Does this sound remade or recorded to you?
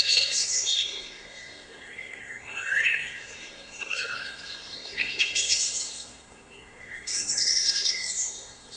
remade